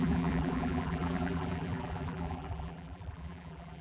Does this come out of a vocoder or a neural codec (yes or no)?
yes